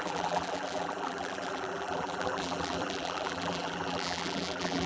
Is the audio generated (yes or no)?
yes